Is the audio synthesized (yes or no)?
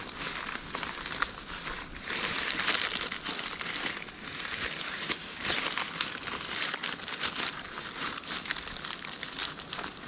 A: no